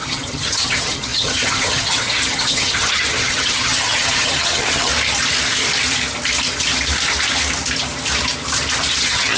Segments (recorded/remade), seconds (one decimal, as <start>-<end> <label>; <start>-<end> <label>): 0.0-4.9 remade; 4.9-9.0 recorded; 9.0-9.4 remade

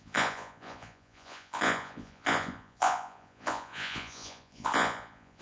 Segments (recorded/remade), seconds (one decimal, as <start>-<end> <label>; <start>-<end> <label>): 0.0-5.4 remade

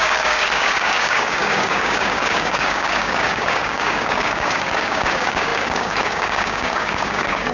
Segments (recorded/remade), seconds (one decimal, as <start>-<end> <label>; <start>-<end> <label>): 0.0-7.5 remade

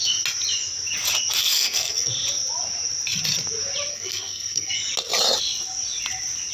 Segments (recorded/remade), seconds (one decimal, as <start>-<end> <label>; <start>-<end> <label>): 0.0-1.4 recorded; 1.4-2.1 remade; 2.1-3.9 recorded; 3.9-4.7 remade; 4.7-6.5 recorded

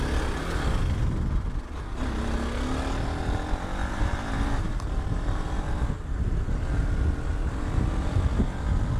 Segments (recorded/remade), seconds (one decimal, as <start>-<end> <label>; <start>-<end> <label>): 0.0-3.8 recorded; 3.8-5.8 remade; 5.8-7.3 recorded; 7.3-7.9 remade; 7.9-9.0 recorded

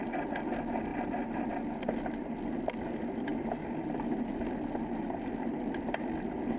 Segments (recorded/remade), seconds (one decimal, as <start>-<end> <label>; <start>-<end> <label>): 0.0-3.3 recorded; 3.3-4.3 remade; 4.3-6.6 recorded

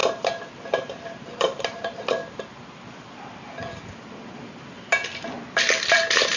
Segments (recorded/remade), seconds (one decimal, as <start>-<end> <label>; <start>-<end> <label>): 0.0-2.2 remade; 2.2-5.6 recorded; 5.6-6.4 remade

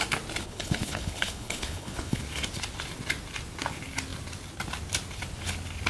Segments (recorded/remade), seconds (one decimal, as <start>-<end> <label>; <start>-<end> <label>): 0.0-0.4 recorded; 0.4-2.2 remade; 2.2-5.9 recorded